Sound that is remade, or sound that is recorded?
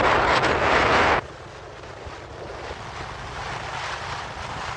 recorded